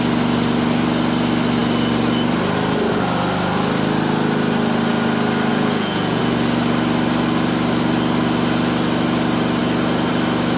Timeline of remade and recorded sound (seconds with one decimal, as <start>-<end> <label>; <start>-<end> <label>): 0.0-5.5 recorded; 5.5-6.2 remade; 6.2-10.6 recorded